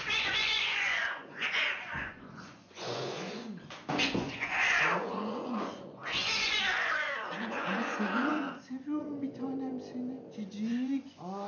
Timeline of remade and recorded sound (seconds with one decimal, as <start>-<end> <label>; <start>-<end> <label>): 0.0-9.7 remade; 9.7-10.7 recorded; 10.7-11.5 remade